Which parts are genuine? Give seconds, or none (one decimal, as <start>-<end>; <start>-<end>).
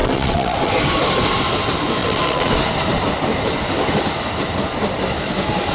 0.7-2.0; 2.5-5.7